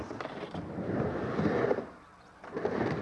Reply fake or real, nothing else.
real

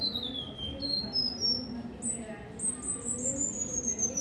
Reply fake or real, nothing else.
real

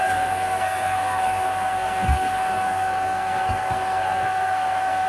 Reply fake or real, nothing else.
fake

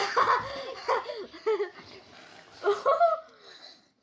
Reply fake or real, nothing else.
real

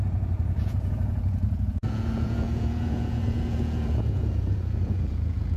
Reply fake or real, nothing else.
fake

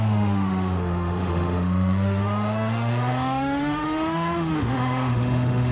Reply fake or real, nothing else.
fake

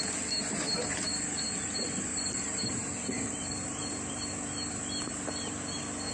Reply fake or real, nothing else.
fake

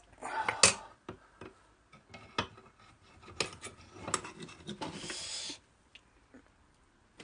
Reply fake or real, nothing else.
real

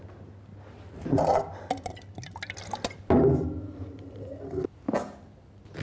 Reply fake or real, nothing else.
real